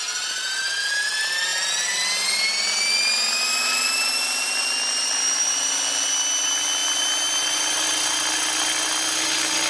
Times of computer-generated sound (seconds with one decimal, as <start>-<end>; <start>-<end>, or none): none